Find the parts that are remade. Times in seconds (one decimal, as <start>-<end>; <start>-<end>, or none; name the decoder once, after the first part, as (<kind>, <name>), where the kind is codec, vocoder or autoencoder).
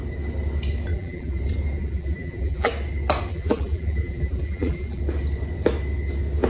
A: 0.9-1.4 (vocoder, BigVGAN v2); 1.8-2.7; 3.3-5.0